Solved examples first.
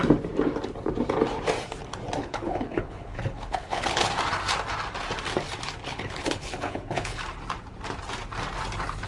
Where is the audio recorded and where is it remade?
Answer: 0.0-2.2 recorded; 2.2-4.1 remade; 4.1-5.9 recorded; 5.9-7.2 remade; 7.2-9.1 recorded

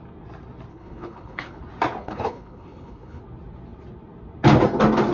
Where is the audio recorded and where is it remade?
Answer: 0.0-0.7 recorded; 0.7-1.6 remade; 1.6-2.0 recorded; 2.0-3.2 remade; 3.2-5.1 recorded

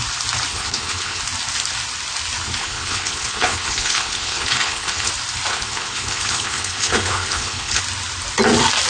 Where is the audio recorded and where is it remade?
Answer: 0.0-0.5 recorded; 0.5-1.2 remade; 1.2-2.6 recorded; 2.6-5.1 remade; 5.1-5.5 recorded; 5.5-7.8 remade; 7.8-8.9 recorded

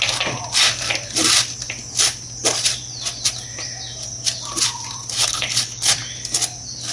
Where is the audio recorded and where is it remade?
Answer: 0.0-5.2 recorded; 5.2-5.9 remade; 5.9-6.9 recorded